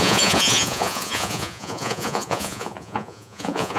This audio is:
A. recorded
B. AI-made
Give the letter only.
B